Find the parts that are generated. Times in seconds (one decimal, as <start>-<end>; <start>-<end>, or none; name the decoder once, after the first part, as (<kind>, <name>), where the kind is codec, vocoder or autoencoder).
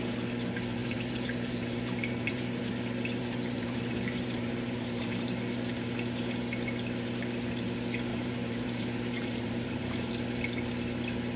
0.8-2.6 (vocoder, BigVGAN v2); 3.2-5.4; 8.1-10.1